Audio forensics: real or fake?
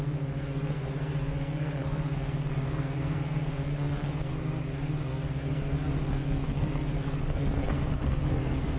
fake